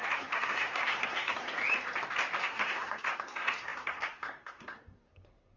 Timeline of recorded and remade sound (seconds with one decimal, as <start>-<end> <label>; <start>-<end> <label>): 0.0-1.6 remade; 1.6-2.4 recorded; 2.4-5.6 remade